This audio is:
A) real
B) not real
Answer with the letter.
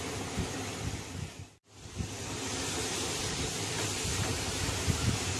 A